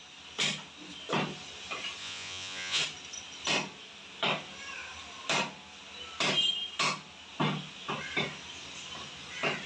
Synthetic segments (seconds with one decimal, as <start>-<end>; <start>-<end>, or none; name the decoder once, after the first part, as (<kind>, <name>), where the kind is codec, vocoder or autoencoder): 2.0-2.8 (vocoder, Vocos)